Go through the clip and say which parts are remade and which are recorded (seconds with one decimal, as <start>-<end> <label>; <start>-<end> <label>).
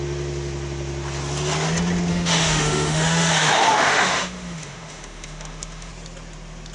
0.0-2.1 recorded; 2.1-5.9 remade; 5.9-6.7 recorded